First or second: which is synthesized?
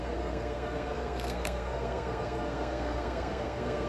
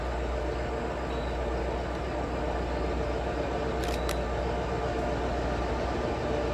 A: first